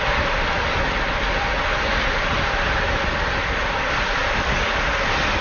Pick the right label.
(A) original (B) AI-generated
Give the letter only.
A